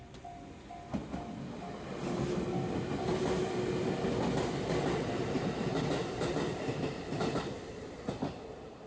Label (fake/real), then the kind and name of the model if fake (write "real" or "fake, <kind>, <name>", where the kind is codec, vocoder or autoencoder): real